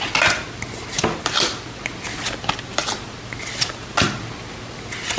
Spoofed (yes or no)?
no